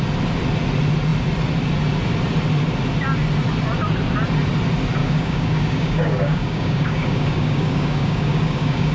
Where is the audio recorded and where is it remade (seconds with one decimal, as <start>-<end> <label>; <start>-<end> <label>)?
0.0-5.0 recorded; 5.0-8.9 remade